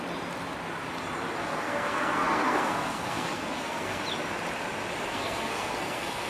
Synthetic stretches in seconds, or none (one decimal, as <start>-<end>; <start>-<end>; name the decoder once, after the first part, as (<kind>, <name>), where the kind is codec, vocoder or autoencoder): 1.4-4.0 (codec, SNAC); 5.1-6.3